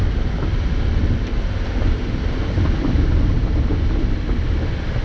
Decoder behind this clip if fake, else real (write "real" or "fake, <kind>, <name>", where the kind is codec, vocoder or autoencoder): real